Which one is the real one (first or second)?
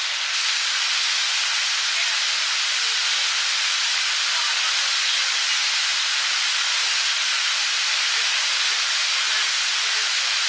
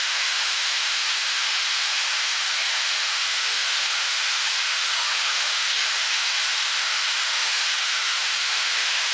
first